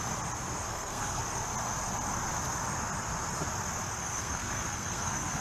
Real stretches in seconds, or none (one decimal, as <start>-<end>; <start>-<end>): 0.0-0.7; 1.2-4.0